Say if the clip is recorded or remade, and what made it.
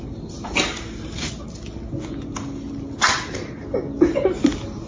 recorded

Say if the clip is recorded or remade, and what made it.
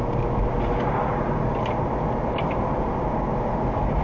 recorded